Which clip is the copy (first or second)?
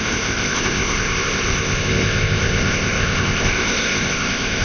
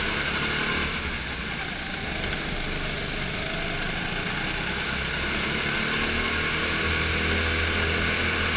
first